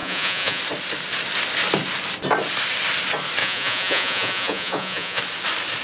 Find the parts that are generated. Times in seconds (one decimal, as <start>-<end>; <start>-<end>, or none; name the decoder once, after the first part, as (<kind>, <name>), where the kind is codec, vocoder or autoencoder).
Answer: 0.0-0.6 (vocoder, Vocos); 3.4-5.2